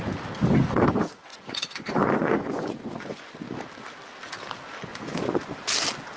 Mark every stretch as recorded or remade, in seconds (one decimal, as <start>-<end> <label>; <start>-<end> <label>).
0.0-1.3 recorded; 1.3-3.3 remade; 3.3-4.9 recorded; 4.9-5.6 remade; 5.6-6.2 recorded